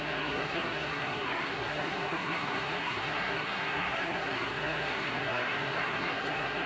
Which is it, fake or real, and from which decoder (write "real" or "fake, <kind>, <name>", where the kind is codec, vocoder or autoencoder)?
fake, codec, SNAC